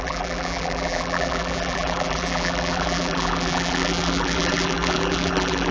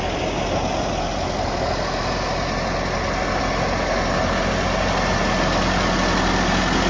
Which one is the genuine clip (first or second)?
second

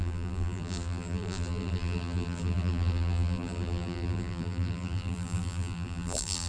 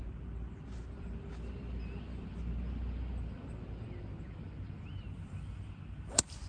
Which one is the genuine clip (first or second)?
second